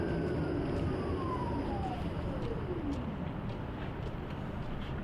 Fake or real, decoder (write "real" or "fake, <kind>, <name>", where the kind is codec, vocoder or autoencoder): real